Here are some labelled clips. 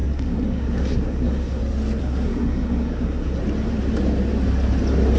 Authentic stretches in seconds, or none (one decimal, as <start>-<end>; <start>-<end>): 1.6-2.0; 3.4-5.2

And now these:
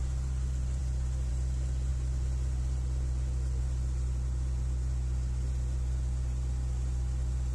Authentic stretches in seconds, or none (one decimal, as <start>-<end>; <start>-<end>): 0.0-7.5

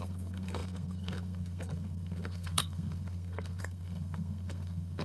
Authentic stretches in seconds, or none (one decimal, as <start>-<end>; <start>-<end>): none

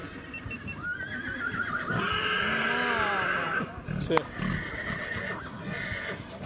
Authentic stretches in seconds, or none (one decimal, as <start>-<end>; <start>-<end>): 0.0-6.5

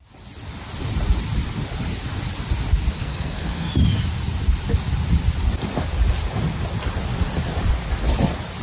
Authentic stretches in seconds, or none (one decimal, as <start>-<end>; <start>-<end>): 0.0-3.0; 3.7-8.6

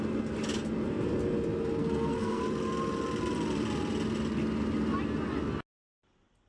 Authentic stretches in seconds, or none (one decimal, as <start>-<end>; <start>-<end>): 0.0-1.8; 2.4-6.5